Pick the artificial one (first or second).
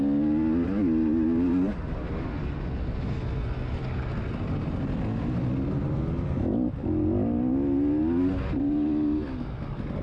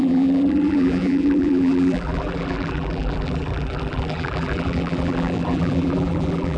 second